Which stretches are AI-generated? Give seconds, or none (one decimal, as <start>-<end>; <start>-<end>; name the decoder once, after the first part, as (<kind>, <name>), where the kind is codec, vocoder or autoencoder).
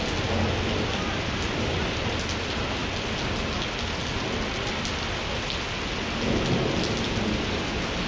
none